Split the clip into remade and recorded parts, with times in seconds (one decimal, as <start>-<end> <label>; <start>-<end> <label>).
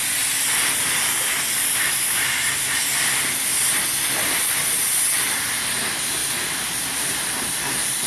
0.0-6.2 recorded; 6.2-8.1 remade